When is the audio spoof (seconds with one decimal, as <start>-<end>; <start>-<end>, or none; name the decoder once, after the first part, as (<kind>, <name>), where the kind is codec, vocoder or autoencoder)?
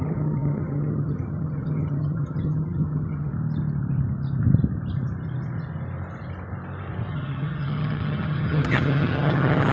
0.0-3.3 (vocoder, HiFi-GAN); 7.1-9.7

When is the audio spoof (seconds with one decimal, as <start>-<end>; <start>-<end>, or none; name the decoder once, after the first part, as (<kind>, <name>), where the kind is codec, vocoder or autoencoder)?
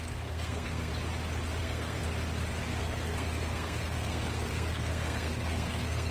0.0-0.9 (codec, SNAC); 1.6-2.0; 2.8-6.1